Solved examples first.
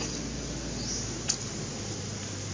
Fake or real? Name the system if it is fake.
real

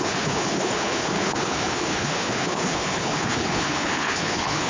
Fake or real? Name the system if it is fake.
fake, codec, HILCodec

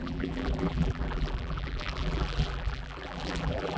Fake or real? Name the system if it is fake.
fake, vocoder, BigVGAN v2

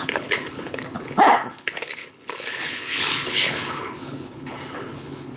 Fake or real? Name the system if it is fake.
fake, codec, HILCodec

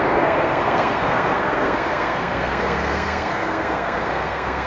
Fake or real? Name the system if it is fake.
fake, codec, SNAC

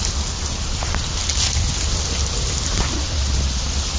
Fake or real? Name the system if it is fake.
real